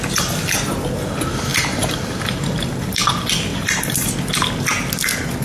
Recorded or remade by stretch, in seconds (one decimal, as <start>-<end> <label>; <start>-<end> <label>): 0.0-1.5 recorded; 1.5-3.1 remade; 3.1-3.5 recorded; 3.5-4.1 remade; 4.1-5.4 recorded